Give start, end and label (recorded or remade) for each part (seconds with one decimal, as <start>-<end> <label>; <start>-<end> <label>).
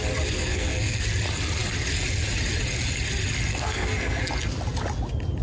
0.0-0.4 recorded; 0.4-1.0 remade; 1.0-3.5 recorded; 3.5-4.2 remade; 4.2-5.4 recorded